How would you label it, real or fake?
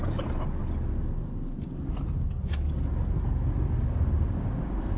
real